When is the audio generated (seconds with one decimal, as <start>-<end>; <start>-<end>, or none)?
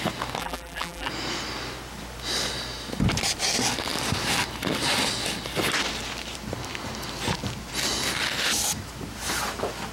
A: 0.4-1.1